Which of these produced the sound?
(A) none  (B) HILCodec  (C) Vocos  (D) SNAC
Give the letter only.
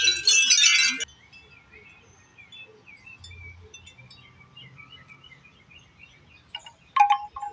A